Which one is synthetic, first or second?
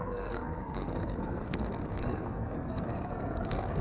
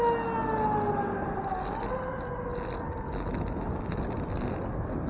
first